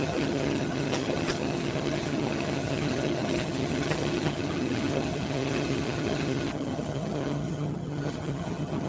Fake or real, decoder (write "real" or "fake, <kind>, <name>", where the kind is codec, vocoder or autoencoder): fake, vocoder, HiFi-GAN